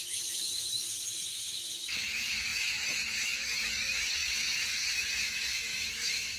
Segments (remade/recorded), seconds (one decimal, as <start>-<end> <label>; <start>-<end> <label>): 0.0-6.4 remade